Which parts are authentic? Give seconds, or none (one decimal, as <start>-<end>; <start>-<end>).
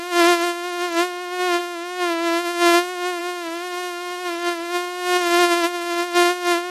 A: 0.0-1.6; 3.2-6.7